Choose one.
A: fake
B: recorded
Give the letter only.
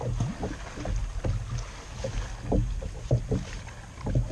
B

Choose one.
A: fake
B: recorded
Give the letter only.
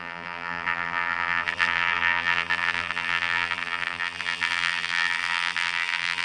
A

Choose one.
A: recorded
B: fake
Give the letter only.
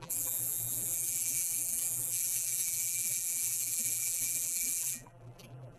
B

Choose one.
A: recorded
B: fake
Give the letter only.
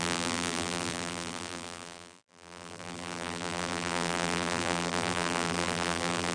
B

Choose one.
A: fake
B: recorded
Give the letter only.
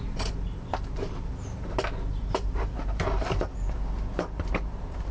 A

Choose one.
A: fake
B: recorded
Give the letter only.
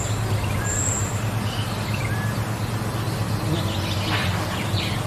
A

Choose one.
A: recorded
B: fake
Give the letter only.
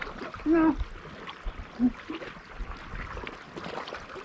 A